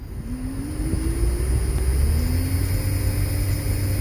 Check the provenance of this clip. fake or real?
real